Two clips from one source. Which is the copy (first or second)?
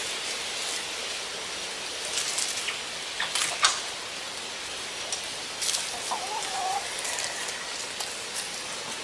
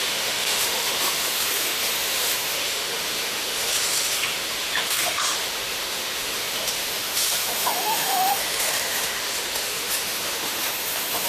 second